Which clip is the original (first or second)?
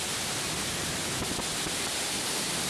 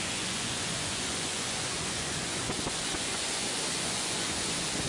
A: first